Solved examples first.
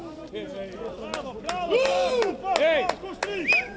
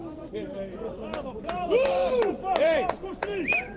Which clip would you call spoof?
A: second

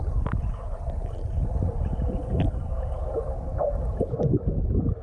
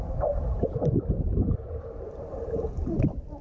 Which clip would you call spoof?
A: second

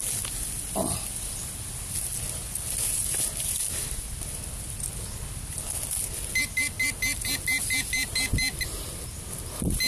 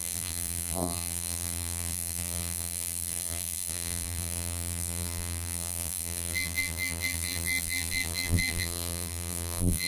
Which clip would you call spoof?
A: second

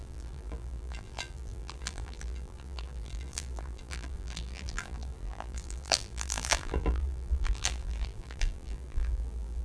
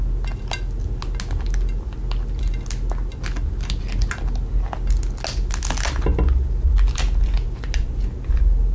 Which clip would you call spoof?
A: first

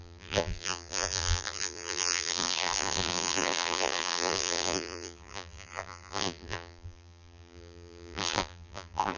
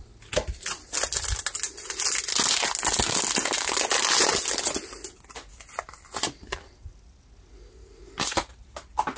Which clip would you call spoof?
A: first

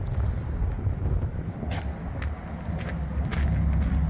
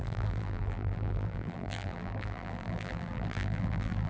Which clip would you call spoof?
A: second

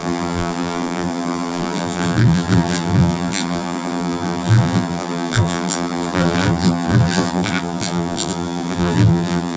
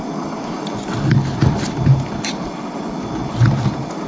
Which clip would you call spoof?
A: first